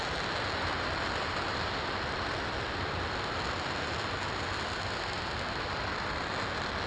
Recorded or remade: recorded